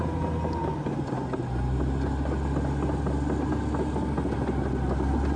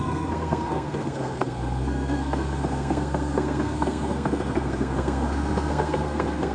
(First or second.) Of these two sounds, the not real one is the second